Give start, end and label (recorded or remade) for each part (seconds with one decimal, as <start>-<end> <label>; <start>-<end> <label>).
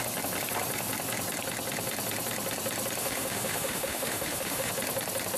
0.0-3.0 recorded; 3.0-4.7 remade; 4.7-5.4 recorded